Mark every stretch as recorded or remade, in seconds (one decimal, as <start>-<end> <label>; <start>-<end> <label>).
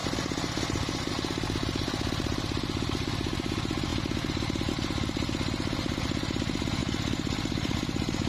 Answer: 0.0-8.3 recorded